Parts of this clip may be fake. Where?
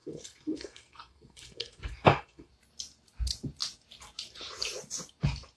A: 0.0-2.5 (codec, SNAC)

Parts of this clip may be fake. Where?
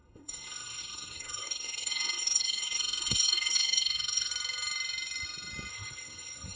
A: 0.0-4.3 (codec, SNAC); 5.7-6.6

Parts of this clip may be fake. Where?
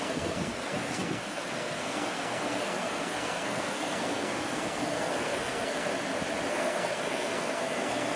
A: 0.0-5.9 (codec, SNAC); 6.5-8.2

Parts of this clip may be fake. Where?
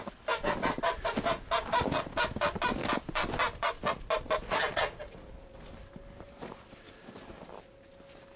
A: none